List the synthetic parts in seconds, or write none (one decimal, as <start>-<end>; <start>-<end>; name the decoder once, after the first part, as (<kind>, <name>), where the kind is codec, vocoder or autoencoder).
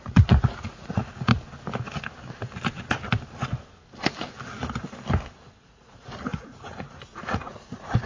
0.0-1.0 (vocoder, Vocos); 5.6-8.1